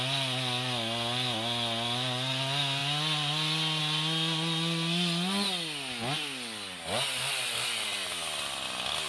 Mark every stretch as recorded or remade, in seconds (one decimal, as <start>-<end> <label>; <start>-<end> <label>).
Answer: 0.0-9.1 recorded